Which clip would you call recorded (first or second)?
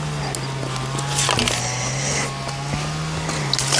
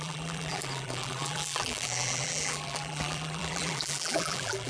first